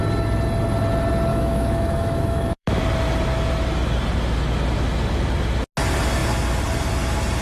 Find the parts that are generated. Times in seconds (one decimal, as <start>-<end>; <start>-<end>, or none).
1.3-2.8